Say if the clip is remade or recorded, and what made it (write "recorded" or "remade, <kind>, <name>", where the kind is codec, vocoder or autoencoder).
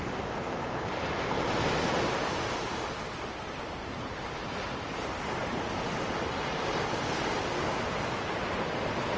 remade, vocoder, BigVGAN v2